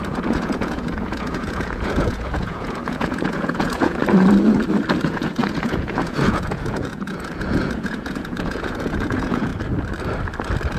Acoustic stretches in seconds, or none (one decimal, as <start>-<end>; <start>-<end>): 4.0-5.0; 9.5-10.8